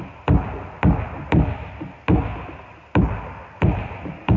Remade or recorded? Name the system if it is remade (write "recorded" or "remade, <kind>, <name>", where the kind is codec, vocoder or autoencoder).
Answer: recorded